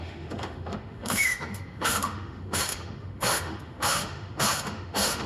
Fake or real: fake